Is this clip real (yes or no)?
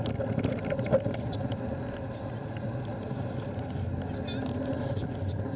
yes